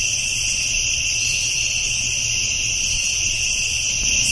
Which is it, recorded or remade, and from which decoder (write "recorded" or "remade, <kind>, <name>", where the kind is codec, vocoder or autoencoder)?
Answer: recorded